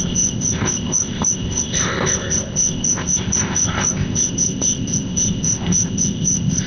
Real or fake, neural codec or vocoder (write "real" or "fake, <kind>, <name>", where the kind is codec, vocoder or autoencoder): fake, codec, ZipCodec